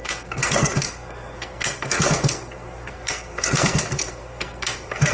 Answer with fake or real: fake